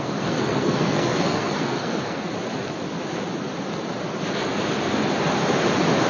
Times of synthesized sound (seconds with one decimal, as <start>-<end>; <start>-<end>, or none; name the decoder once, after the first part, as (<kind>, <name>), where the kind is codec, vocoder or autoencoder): 0.0-2.3 (codec, SNAC)

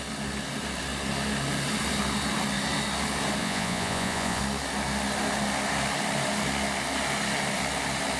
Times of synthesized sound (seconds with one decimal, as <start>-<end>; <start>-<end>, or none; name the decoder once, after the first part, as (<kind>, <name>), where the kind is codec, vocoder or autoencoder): 3.4-4.4 (vocoder, Vocos)

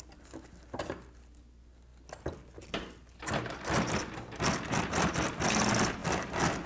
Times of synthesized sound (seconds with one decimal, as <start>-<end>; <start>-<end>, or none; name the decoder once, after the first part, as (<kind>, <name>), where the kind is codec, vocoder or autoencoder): none

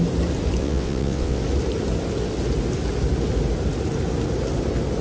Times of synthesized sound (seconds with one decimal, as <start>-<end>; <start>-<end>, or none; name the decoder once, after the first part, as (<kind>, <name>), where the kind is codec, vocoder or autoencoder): 0.6-1.4 (vocoder, WaveNeXt)

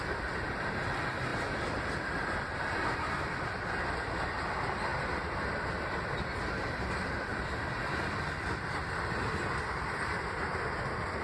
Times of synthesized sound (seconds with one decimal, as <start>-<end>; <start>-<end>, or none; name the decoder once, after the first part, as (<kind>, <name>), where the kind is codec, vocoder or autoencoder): 1.3-2.6 (vocoder, BigVGAN v2)